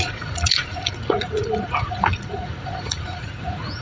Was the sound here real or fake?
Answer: fake